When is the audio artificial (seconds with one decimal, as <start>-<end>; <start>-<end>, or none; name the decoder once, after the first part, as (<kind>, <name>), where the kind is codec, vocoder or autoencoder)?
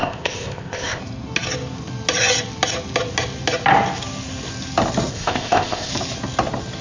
0.0-1.0 (codec, ZipCodec); 5.1-5.9